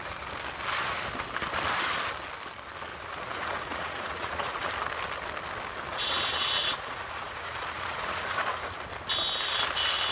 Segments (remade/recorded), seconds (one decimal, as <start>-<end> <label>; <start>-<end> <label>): 0.0-2.9 recorded; 2.9-4.7 remade; 4.7-5.9 recorded; 5.9-8.8 remade; 8.8-10.1 recorded